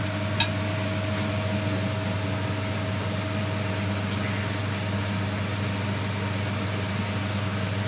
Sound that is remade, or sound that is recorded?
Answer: recorded